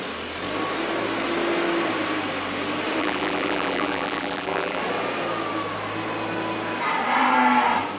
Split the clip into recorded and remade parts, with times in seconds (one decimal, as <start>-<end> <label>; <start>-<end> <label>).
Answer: 0.0-3.0 recorded; 3.0-4.8 remade; 4.8-8.0 recorded